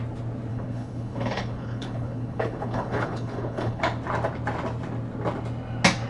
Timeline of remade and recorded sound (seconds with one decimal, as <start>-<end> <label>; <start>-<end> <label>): 0.0-0.5 recorded; 0.5-3.8 remade; 3.8-6.1 recorded

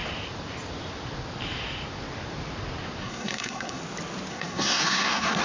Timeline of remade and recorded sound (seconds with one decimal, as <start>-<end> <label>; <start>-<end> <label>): 0.0-3.0 recorded; 3.0-3.8 remade; 3.8-4.3 recorded; 4.3-5.4 remade

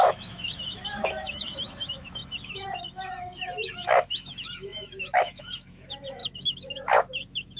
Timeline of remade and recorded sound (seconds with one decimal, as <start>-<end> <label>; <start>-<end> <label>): 0.0-7.6 remade

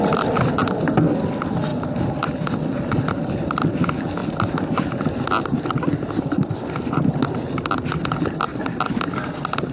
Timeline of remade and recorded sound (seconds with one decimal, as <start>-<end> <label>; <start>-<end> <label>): 0.0-1.7 recorded; 1.7-3.1 remade; 3.1-8.5 recorded; 8.5-9.7 remade

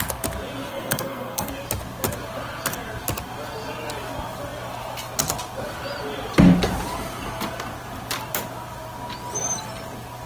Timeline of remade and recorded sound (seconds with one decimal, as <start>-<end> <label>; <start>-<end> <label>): 0.0-0.7 recorded; 0.7-1.5 remade; 1.5-10.3 recorded